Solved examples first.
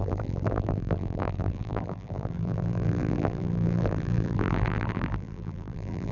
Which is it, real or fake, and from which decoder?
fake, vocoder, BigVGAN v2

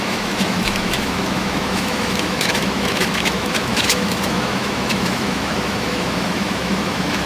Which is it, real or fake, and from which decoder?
fake, autoencoder, DAC-VAE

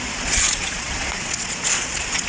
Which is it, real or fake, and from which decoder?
fake, vocoder, Vocos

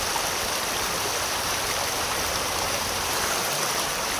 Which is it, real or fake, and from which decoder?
fake, vocoder, BigVGAN v2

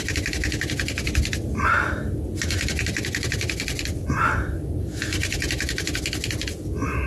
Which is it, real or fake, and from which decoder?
real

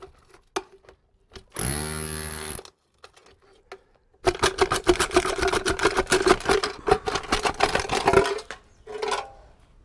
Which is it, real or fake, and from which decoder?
real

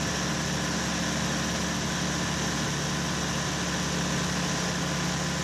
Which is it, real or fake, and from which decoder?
real